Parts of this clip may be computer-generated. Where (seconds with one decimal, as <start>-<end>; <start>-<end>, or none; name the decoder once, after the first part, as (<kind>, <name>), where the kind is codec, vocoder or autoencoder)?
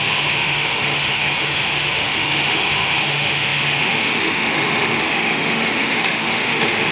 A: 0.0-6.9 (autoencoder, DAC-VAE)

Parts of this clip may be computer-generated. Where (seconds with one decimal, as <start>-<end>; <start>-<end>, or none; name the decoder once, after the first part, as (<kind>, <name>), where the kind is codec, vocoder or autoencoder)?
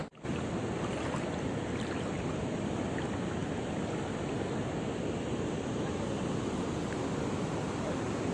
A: none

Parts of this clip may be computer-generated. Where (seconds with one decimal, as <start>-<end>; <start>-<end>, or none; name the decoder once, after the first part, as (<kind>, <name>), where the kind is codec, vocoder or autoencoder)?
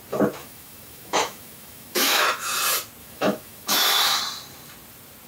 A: 0.4-2.5 (autoencoder, DAC-VAE); 3.0-4.2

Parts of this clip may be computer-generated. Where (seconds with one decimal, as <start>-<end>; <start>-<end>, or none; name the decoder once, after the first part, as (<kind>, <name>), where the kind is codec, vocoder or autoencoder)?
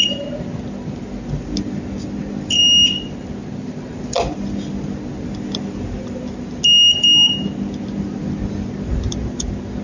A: none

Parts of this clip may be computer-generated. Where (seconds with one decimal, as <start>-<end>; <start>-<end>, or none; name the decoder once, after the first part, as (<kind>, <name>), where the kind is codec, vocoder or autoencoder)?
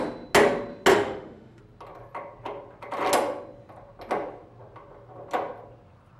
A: 0.9-1.6 (autoencoder, DAC-VAE)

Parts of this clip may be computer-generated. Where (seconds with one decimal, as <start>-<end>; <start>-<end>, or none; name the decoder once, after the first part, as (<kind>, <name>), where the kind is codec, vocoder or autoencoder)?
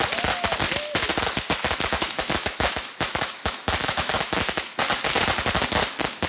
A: 1.6-4.8 (autoencoder, DAC-VAE)